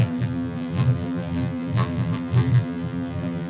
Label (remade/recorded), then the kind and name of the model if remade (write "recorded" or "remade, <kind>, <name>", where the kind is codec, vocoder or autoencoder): remade, vocoder, BigVGAN v2